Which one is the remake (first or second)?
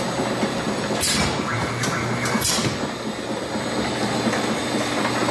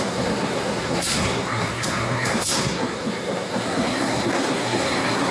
second